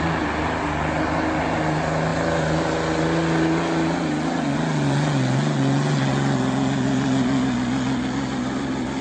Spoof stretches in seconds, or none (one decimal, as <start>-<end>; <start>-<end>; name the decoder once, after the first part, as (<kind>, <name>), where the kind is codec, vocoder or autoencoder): none